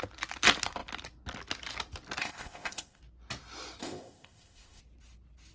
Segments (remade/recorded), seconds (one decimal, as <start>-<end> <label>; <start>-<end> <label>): 0.0-2.2 recorded; 2.2-3.0 remade; 3.0-3.8 recorded; 3.8-4.8 remade; 4.8-5.5 recorded